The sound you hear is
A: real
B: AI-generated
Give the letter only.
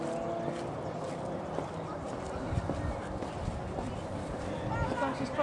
A